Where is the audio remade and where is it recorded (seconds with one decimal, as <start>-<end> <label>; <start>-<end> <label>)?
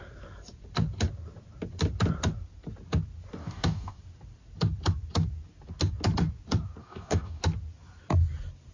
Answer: 0.0-3.4 recorded; 3.4-4.0 remade; 4.0-6.8 recorded; 6.8-7.4 remade; 7.4-8.7 recorded